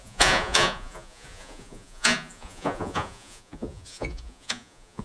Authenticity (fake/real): fake